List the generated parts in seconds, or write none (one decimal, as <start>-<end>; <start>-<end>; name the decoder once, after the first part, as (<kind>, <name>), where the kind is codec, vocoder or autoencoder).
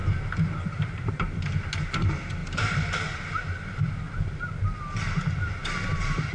0.0-1.1 (vocoder, BigVGAN v2); 2.4-4.0; 5.6-6.3